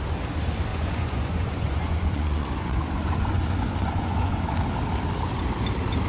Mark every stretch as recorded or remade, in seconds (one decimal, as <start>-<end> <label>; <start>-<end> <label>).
0.0-0.7 recorded; 0.7-4.4 remade; 4.4-6.1 recorded